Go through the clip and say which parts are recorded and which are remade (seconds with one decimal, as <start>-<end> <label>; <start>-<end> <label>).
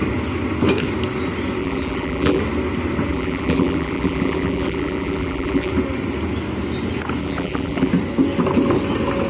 0.0-1.6 recorded; 1.6-2.4 remade; 2.4-3.1 recorded; 3.1-5.7 remade; 5.7-7.2 recorded; 7.2-7.9 remade; 7.9-9.3 recorded